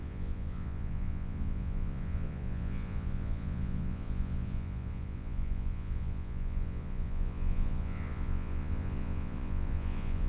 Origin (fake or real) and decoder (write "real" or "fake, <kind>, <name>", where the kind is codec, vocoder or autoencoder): fake, vocoder, Vocos